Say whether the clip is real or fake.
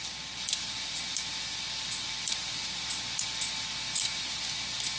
real